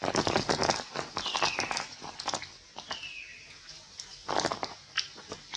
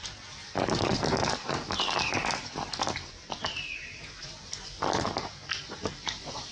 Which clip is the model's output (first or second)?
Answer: second